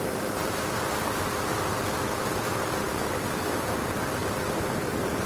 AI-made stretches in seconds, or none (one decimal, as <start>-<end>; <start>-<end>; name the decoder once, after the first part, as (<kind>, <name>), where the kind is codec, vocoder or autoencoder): 0.4-1.4 (vocoder, BigVGAN v2); 4.2-5.3